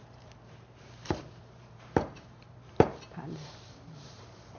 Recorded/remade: remade